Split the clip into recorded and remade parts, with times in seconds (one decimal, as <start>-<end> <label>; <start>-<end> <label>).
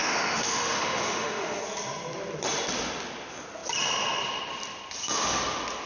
0.0-1.6 remade; 1.6-5.9 recorded